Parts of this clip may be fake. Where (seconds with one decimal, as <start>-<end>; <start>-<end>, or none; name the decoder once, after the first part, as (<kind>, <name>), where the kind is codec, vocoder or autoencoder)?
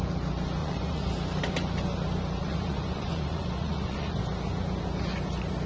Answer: 0.6-1.1 (vocoder, Vocos); 2.4-4.2